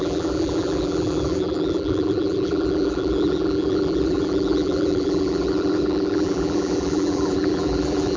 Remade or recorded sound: remade